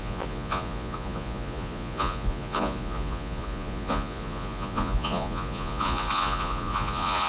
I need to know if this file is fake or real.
fake